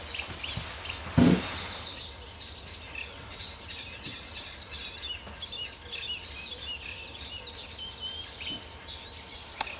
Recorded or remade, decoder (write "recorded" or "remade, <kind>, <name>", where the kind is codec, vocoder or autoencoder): recorded